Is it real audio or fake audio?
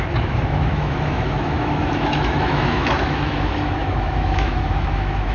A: fake